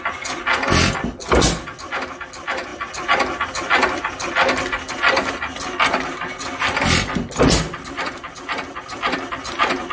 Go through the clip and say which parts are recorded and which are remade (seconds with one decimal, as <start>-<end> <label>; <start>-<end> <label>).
0.0-9.9 recorded